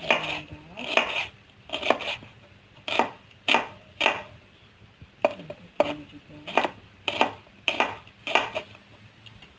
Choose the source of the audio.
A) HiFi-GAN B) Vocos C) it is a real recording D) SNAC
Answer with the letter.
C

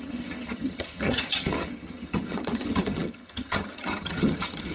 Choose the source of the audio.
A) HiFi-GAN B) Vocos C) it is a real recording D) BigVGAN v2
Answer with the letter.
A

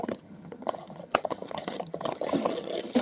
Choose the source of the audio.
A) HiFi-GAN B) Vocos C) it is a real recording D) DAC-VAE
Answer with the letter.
A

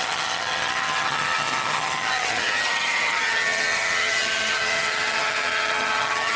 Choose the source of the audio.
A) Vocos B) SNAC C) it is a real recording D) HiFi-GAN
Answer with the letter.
D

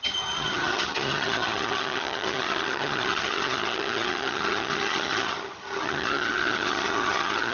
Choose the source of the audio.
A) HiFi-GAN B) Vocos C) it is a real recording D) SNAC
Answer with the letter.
A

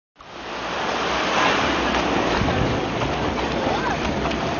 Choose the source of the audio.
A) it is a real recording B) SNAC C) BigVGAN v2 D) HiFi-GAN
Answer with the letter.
A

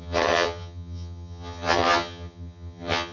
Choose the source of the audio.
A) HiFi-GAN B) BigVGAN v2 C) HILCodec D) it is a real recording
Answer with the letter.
A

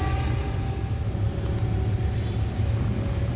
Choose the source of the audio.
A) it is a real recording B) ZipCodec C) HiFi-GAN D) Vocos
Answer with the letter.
A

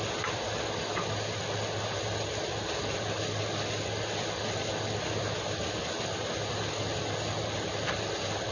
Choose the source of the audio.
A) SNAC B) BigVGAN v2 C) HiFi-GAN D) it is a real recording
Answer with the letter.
D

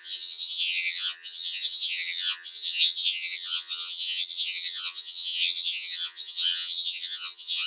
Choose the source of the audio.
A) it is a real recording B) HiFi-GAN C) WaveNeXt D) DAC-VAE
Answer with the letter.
B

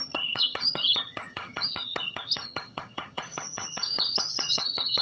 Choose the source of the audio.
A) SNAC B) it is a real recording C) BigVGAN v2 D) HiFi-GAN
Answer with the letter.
D